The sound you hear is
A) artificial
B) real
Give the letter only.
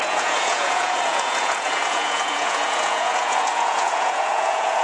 A